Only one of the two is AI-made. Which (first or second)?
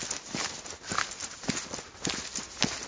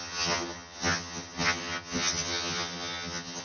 second